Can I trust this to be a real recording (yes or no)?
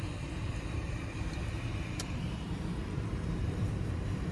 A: no